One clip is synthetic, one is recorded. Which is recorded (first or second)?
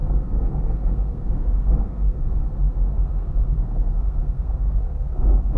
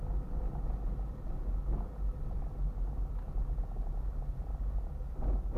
second